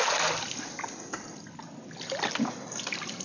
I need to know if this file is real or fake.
real